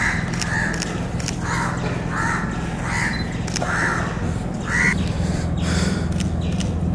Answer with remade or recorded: recorded